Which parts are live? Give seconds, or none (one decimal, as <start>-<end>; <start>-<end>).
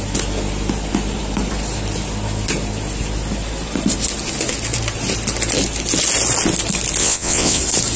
0.0-7.0; 7.6-8.0